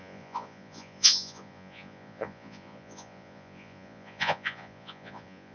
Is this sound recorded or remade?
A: remade